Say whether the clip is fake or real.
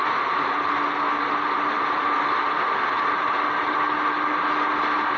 real